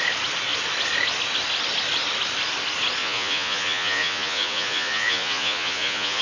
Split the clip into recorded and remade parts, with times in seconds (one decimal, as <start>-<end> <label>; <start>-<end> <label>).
0.0-3.0 recorded; 3.0-6.2 remade